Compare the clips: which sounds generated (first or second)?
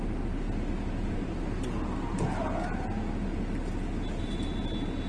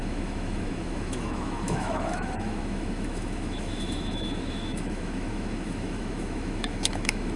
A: second